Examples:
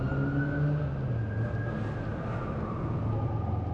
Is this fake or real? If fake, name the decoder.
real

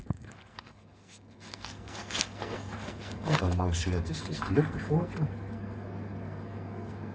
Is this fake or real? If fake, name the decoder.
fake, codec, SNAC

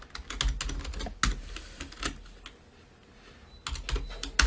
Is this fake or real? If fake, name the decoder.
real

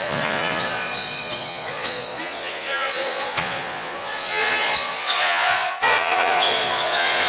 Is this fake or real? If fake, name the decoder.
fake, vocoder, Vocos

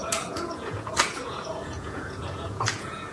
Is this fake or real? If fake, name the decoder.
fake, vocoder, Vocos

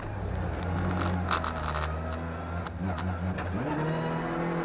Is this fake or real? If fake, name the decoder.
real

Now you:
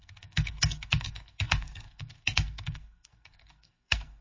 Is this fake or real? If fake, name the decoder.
fake, codec, SNAC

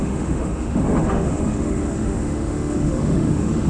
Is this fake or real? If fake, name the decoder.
fake, autoencoder, DAC-VAE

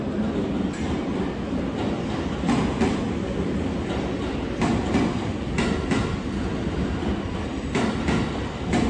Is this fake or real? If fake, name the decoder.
real